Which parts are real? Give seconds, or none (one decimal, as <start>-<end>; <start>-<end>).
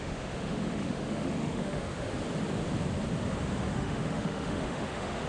2.1-3.7